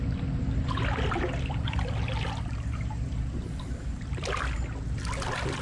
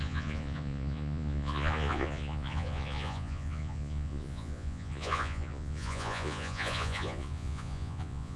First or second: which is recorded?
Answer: first